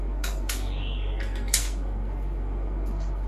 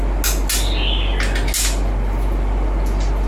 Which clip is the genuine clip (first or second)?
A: second